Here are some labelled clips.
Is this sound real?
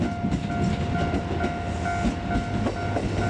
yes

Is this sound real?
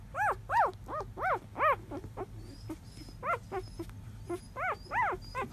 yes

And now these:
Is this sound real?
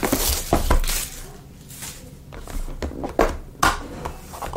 yes